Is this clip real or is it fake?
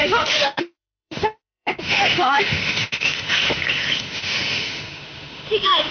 fake